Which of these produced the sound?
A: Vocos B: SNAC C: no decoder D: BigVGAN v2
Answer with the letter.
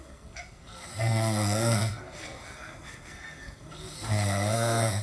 B